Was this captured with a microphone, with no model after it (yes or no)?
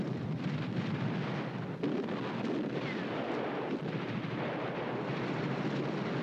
no